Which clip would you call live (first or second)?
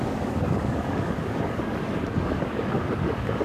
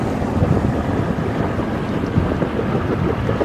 second